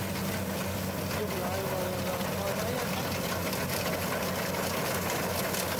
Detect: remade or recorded recorded